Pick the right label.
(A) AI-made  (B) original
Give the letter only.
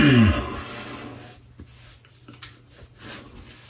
B